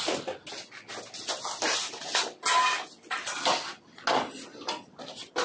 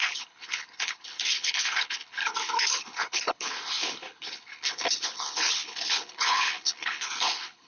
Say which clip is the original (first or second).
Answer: first